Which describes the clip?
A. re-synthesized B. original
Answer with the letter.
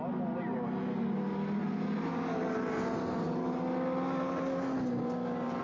B